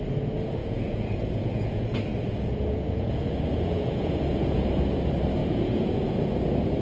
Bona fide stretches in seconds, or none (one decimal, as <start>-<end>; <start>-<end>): 0.0-0.6; 4.7-5.4; 6.3-6.8